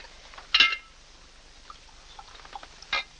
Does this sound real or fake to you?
real